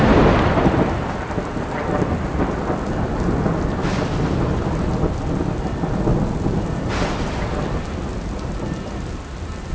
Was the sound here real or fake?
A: real